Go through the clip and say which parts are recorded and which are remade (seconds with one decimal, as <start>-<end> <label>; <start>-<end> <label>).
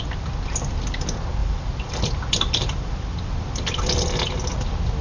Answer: 0.0-1.4 recorded; 1.4-4.4 remade; 4.4-5.0 recorded